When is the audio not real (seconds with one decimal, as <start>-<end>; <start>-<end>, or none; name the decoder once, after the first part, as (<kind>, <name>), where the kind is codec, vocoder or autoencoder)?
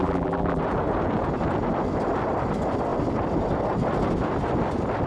0.0-0.6 (vocoder, BigVGAN v2)